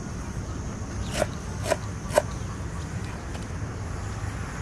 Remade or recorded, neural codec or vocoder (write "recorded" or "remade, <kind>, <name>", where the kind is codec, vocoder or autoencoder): recorded